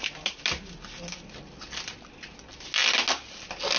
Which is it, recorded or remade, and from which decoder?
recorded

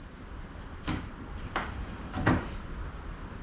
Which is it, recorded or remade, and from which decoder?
recorded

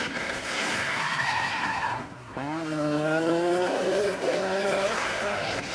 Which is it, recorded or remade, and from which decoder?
remade, codec, SNAC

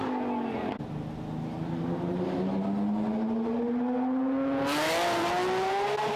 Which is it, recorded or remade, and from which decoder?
recorded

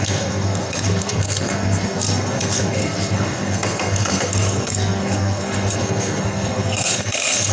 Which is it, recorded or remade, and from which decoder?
remade, codec, SNAC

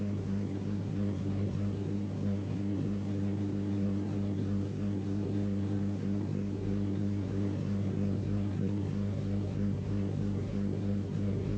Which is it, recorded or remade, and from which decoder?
remade, codec, SNAC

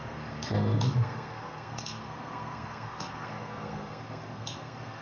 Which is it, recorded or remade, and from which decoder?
remade, codec, SNAC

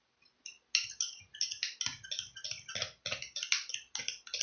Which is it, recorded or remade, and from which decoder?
recorded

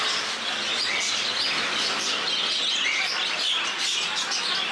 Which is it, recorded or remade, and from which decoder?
recorded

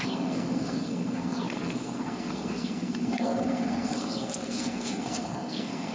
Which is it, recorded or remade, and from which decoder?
remade, codec, SNAC